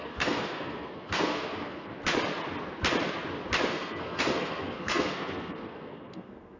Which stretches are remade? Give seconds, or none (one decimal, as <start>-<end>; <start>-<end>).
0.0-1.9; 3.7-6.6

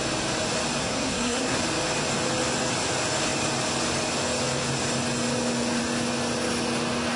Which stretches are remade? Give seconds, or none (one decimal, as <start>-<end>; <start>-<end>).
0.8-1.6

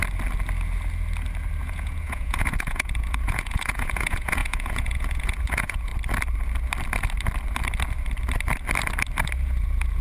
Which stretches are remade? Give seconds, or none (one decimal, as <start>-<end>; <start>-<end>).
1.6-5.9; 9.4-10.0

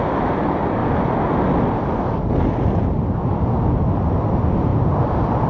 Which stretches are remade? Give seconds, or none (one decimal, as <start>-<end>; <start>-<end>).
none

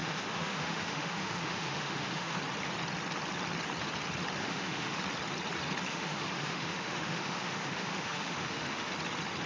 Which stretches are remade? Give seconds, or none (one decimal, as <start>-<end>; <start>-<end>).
0.0-2.4; 4.4-5.0; 5.9-8.9